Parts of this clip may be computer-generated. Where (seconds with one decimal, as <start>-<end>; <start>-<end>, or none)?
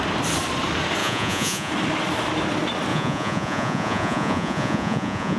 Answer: 1.0-1.7; 2.9-5.4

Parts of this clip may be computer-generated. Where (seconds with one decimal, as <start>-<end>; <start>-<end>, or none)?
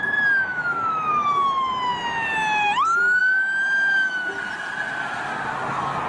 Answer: 0.5-1.7; 3.2-4.3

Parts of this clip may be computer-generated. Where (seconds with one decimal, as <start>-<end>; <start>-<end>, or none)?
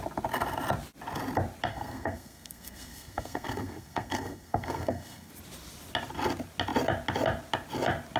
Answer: 1.7-5.3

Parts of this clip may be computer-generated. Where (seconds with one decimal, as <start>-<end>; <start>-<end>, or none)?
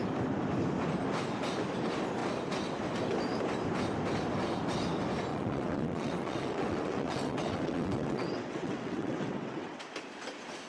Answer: 5.3-9.8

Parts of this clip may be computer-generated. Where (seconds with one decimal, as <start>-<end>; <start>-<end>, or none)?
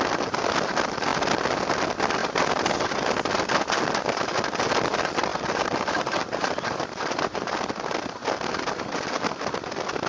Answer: 5.3-7.4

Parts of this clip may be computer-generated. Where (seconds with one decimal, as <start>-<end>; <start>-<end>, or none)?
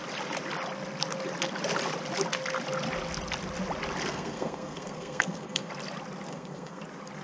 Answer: 4.1-5.7; 6.3-6.8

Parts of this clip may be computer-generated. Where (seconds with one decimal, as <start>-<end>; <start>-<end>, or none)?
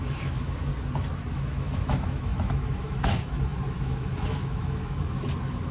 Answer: 0.0-0.7; 1.3-5.7